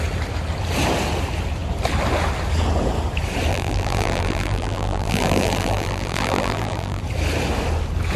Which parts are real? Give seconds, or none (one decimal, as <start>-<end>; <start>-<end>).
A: 0.0-3.5; 7.0-8.2